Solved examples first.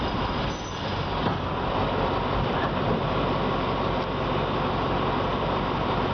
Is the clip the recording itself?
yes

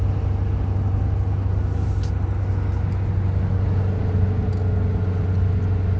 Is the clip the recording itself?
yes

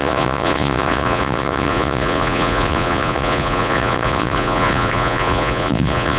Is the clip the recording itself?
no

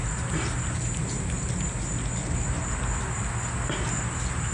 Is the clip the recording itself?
yes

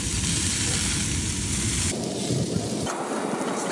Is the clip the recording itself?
yes